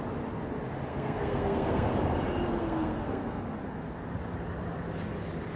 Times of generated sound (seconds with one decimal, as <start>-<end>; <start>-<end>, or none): 0.9-1.9; 2.6-3.4